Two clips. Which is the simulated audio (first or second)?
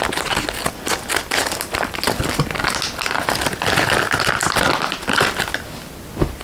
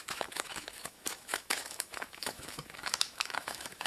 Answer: second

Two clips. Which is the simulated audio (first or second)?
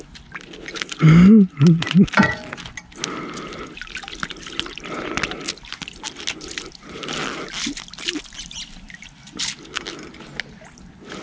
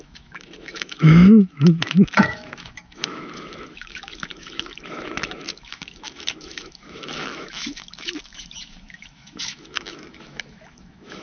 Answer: second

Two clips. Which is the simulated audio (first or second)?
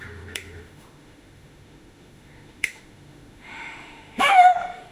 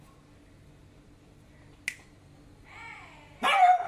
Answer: first